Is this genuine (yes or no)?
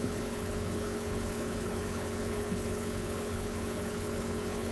no